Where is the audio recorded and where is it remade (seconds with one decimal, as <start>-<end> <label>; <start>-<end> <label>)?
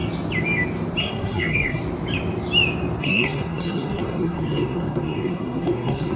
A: 0.0-1.0 recorded; 1.0-1.8 remade; 1.8-3.0 recorded; 3.0-6.2 remade